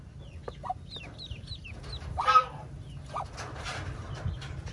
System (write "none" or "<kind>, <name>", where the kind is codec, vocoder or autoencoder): vocoder, BigVGAN v2